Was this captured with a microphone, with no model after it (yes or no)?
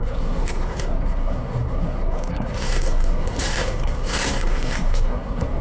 no